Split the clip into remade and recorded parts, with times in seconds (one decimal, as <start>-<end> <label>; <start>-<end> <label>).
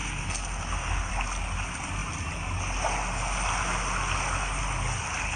0.0-1.1 remade; 1.1-5.4 recorded